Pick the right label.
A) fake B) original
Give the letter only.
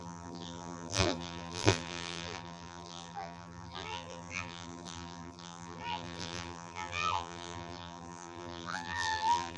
A